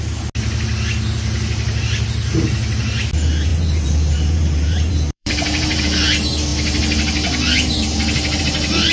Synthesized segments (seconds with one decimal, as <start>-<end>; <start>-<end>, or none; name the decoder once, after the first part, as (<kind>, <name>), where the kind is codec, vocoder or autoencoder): 3.5-5.8 (vocoder, BigVGAN v2)